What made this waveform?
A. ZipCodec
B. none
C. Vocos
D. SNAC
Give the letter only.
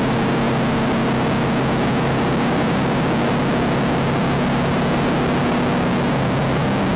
B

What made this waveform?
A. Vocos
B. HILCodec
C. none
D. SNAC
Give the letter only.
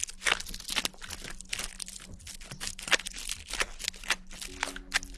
C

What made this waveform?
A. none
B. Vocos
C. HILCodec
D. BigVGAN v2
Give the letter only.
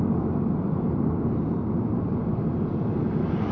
A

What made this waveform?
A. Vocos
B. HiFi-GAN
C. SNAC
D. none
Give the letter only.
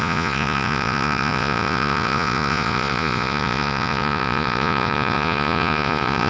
A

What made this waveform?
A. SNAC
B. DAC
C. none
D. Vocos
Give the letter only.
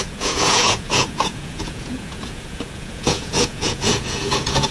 D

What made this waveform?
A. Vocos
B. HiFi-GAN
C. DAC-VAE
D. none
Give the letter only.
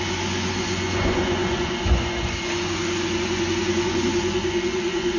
A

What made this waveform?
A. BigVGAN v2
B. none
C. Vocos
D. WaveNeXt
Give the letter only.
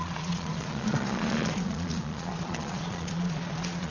C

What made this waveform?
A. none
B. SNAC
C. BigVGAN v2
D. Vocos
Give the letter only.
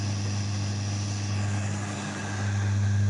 A